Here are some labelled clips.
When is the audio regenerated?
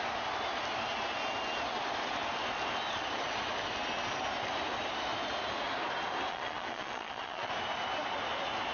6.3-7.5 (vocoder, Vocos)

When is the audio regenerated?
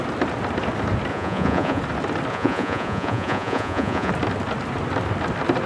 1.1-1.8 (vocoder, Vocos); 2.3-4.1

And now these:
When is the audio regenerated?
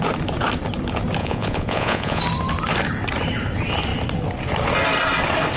1.2-2.2 (vocoder, Vocos)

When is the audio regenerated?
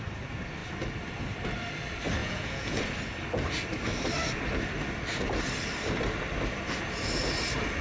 2.2-2.8 (vocoder, Vocos)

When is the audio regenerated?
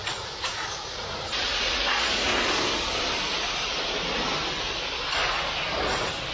0.0-2.3 (vocoder, Vocos)